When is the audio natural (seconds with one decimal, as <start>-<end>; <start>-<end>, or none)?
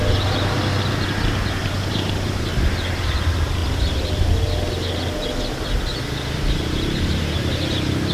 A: 0.0-1.6; 3.2-5.9